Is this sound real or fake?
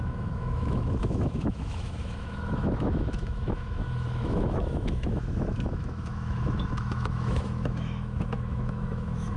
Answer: fake